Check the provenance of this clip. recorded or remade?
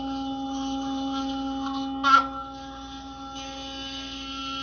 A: recorded